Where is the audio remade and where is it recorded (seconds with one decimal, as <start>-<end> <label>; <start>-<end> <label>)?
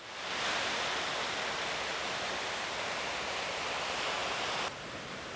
0.0-5.4 recorded